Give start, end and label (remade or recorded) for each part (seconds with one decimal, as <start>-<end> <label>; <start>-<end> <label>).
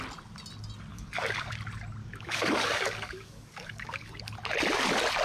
0.0-0.9 recorded; 0.9-1.5 remade; 1.5-2.0 recorded; 2.0-4.2 remade; 4.2-5.2 recorded